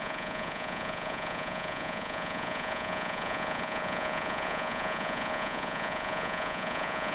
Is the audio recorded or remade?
remade